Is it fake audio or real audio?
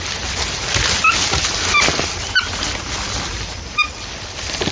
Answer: real